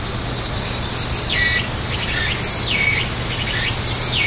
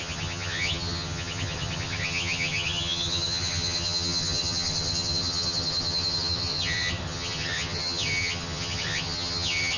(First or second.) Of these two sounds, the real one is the first